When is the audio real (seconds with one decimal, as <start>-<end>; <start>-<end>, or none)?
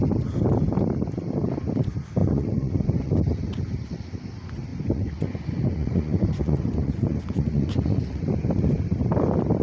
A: 0.0-2.2; 3.1-4.7; 8.2-9.6